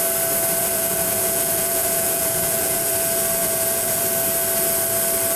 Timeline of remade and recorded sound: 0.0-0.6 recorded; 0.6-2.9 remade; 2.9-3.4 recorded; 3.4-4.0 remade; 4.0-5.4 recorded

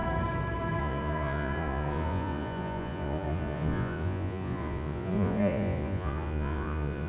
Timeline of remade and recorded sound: 0.0-0.8 recorded; 0.8-7.1 remade

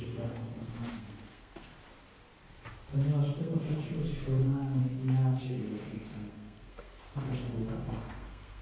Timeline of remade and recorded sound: 0.0-1.7 remade; 1.7-3.4 recorded; 3.4-4.8 remade; 4.8-5.4 recorded; 5.4-8.6 remade

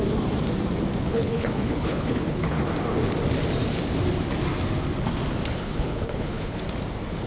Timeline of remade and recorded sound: 0.0-1.1 recorded; 1.1-2.7 remade; 2.7-5.5 recorded; 5.5-6.6 remade; 6.6-7.3 recorded